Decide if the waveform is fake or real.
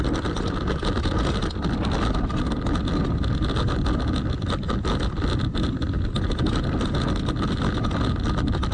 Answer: real